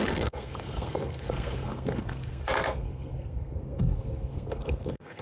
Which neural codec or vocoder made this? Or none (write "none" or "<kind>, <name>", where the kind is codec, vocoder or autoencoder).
codec, SNAC